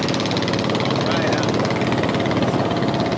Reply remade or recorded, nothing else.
recorded